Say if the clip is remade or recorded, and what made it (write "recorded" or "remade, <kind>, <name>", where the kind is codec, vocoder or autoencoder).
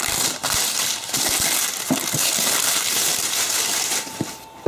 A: remade, vocoder, BigVGAN v2